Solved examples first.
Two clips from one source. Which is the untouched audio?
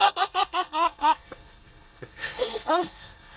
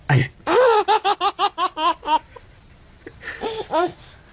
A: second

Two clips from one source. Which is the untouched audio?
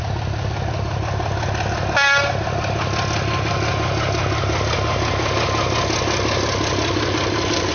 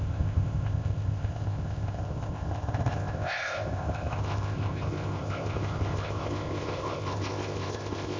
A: first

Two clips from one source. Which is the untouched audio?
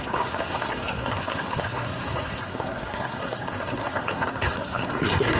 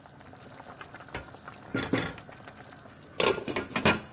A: second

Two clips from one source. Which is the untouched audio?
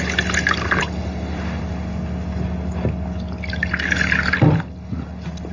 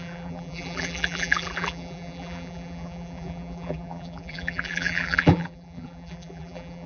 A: first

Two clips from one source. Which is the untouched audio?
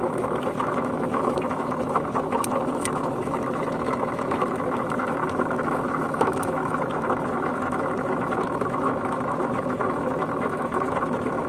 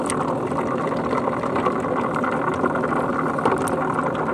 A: second